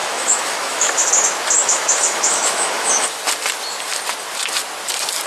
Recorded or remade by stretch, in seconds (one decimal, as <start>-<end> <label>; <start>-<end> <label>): 0.0-1.1 remade; 1.1-1.6 recorded; 1.6-3.2 remade; 3.2-5.3 recorded